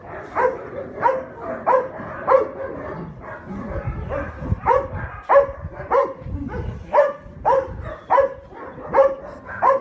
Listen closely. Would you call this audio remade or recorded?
recorded